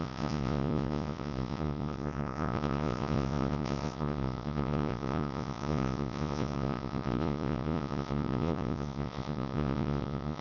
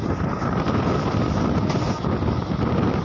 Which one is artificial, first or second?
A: first